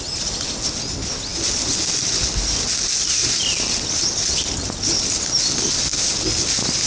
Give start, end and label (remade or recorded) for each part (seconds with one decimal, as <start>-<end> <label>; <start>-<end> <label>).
0.0-6.9 recorded